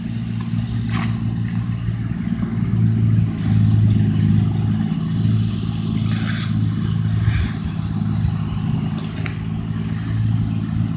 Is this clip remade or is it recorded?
recorded